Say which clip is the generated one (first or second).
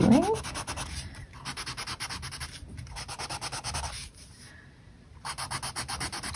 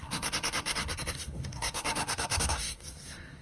second